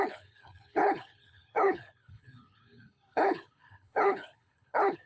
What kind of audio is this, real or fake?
fake